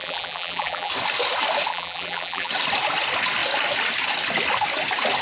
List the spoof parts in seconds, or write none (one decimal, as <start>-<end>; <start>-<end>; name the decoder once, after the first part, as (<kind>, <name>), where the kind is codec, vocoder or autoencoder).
0.0-0.9 (vocoder, BigVGAN v2); 1.7-2.5